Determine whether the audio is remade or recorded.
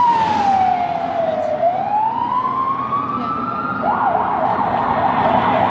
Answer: recorded